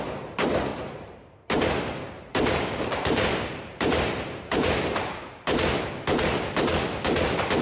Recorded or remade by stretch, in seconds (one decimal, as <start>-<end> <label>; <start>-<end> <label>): 0.0-0.7 recorded; 0.7-1.3 remade; 1.3-2.3 recorded; 2.3-4.9 remade; 4.9-7.6 recorded